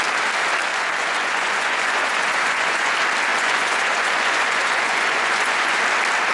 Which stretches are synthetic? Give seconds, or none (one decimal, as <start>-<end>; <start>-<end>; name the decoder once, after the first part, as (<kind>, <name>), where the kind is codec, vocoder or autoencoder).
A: 0.7-2.9 (vocoder, Vocos); 3.3-5.8